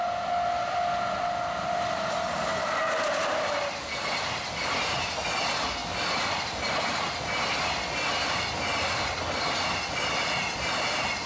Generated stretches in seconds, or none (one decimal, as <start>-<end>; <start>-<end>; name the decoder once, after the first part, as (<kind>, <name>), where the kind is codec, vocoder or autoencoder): none